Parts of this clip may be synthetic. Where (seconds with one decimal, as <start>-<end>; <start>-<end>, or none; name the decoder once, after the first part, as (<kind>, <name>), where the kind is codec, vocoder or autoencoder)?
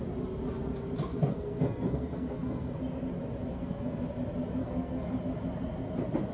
1.1-2.8 (codec, SNAC); 3.5-4.0; 4.6-5.2